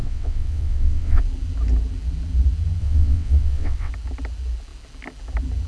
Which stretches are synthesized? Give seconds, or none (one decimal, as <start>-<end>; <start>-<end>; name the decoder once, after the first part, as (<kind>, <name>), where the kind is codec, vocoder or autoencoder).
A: 0.0-1.2 (vocoder, WaveNeXt); 2.8-3.9